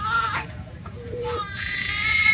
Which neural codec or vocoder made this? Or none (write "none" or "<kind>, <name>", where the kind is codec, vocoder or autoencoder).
vocoder, Vocos